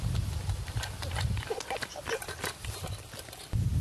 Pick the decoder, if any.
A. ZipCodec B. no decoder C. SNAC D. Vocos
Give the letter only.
B